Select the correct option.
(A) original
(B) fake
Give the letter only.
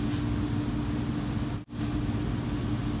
A